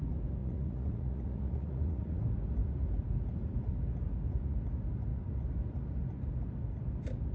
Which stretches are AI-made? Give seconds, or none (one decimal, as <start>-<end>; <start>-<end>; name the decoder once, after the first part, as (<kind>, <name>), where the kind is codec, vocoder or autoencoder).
0.4-2.2 (vocoder, Vocos)